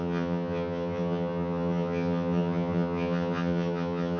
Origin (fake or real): fake